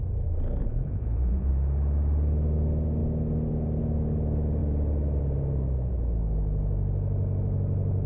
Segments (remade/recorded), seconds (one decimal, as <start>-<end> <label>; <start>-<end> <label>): 0.0-0.6 recorded; 0.6-1.5 remade; 1.5-8.1 recorded